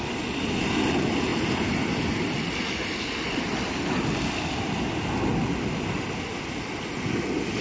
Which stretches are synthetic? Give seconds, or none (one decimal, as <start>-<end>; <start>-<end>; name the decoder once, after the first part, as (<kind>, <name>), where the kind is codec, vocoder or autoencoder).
1.3-2.6 (vocoder, BigVGAN v2)